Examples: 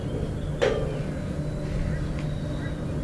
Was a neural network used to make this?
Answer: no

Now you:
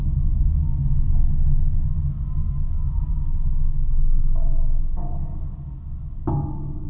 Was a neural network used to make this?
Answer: no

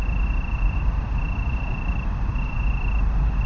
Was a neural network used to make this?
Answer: no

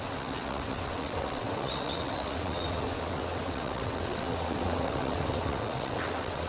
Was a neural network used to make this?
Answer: yes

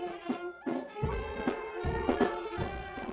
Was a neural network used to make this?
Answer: yes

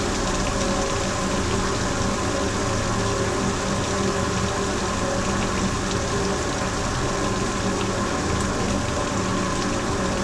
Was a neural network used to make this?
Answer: no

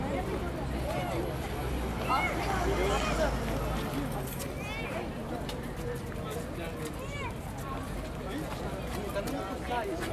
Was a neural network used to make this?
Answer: no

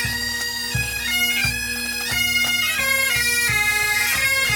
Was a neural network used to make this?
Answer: no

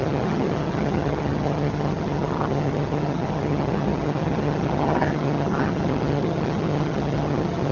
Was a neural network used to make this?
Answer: yes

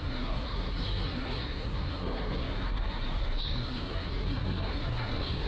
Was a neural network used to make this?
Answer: yes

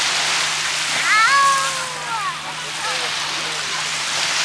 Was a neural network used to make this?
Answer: no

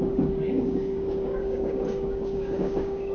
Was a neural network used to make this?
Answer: yes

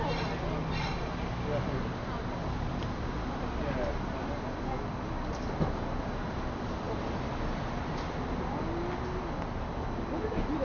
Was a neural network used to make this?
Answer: no